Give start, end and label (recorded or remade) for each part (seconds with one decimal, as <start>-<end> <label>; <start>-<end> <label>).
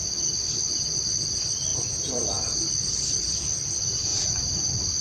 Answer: 0.0-1.7 recorded; 1.7-2.7 remade; 2.7-4.1 recorded; 4.1-5.0 remade